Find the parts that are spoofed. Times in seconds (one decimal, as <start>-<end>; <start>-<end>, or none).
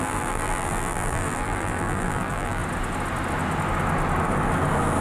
0.0-2.6